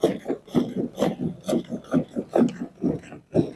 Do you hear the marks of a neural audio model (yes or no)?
no